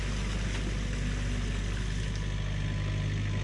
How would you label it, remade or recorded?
recorded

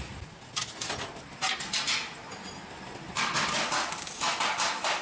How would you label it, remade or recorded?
recorded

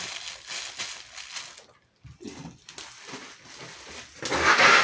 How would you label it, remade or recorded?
recorded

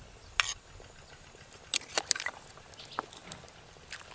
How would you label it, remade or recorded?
recorded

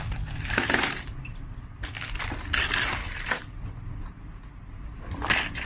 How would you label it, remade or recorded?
recorded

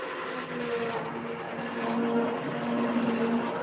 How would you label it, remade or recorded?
recorded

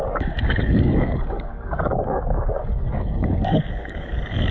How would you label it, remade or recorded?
remade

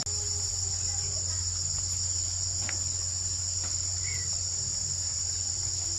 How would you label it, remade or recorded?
recorded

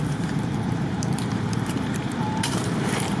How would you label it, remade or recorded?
remade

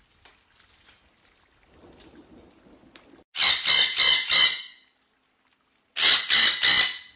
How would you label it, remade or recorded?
recorded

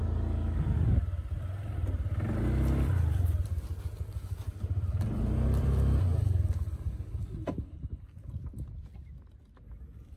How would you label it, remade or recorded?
recorded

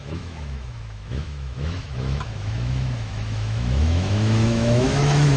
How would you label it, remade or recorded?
remade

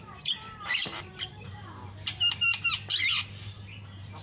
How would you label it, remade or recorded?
remade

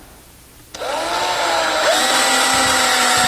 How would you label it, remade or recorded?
recorded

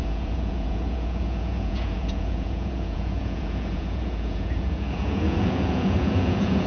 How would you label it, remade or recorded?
remade